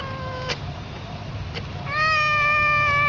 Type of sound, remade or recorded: recorded